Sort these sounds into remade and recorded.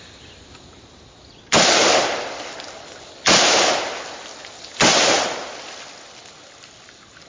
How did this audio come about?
recorded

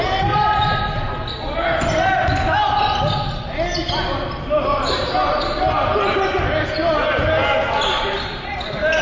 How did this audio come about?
recorded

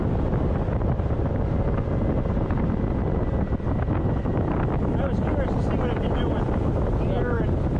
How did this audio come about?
recorded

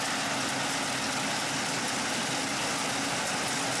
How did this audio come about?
recorded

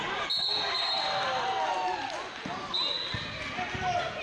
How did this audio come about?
recorded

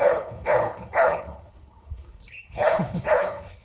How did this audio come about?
remade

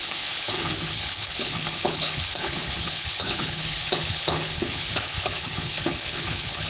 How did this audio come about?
remade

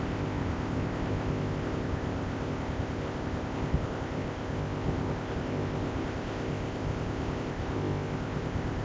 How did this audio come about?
remade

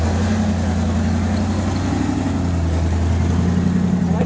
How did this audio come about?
recorded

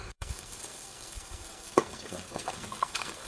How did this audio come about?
remade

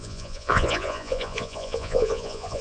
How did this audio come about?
remade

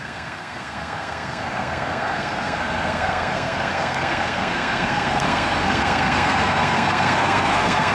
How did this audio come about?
remade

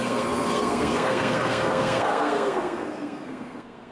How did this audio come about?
remade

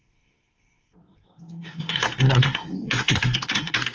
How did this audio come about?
remade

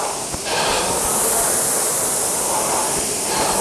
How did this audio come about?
recorded